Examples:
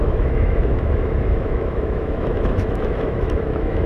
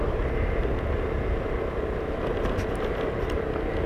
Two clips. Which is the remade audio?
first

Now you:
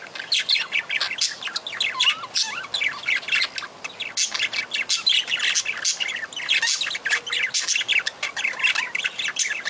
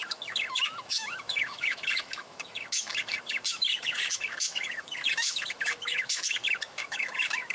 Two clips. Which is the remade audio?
second